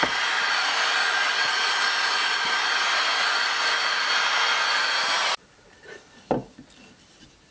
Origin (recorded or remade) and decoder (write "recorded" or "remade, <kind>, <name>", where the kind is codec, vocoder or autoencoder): recorded